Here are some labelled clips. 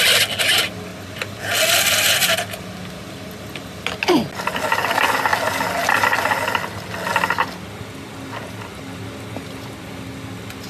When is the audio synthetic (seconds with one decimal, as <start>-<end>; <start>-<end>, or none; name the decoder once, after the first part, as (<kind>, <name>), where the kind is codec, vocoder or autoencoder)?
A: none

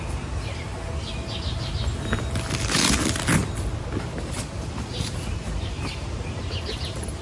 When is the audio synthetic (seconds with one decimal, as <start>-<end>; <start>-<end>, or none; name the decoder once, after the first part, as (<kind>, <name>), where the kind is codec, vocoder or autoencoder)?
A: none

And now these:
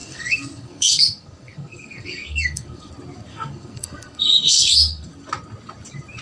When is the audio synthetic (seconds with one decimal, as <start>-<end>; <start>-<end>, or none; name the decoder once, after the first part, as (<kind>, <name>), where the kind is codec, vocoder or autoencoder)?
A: 0.0-2.9 (codec, SNAC); 3.3-5.1

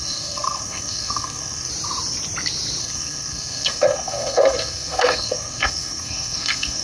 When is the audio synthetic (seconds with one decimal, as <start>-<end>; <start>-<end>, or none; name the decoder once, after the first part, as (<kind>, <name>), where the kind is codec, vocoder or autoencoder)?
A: 0.0-1.7 (codec, SNAC); 2.8-6.8

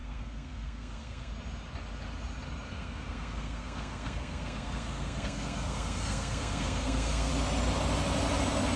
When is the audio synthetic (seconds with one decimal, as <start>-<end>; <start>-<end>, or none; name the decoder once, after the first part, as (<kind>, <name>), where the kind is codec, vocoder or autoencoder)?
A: 0.0-1.3 (codec, SNAC); 2.7-7.3